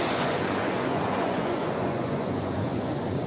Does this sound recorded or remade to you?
remade